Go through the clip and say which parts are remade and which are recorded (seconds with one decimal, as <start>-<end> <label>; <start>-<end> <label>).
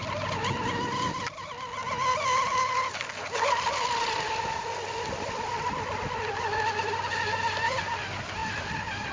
0.0-8.4 recorded; 8.4-9.1 remade